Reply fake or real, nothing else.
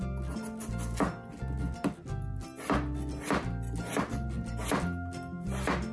real